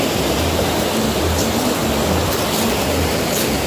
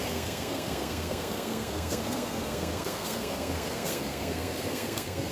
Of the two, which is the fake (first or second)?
second